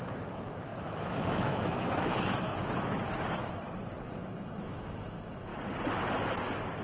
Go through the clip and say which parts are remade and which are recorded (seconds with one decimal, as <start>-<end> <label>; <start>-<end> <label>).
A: 0.0-3.4 remade; 3.4-4.0 recorded; 4.0-5.5 remade; 5.5-6.8 recorded